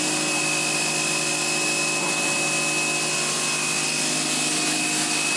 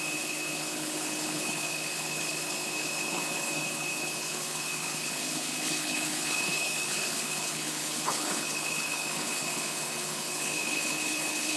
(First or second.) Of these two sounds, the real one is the first